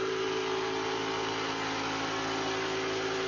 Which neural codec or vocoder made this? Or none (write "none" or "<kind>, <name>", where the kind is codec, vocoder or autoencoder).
none